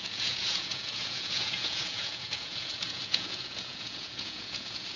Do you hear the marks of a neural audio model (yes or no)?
yes